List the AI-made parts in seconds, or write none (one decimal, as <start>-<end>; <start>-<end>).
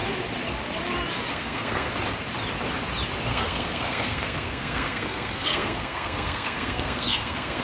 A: 1.3-1.9; 3.3-7.6